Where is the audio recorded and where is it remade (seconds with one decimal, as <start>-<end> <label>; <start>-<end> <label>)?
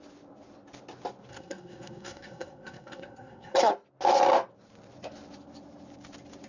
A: 0.0-1.3 recorded; 1.3-3.7 remade; 3.7-6.5 recorded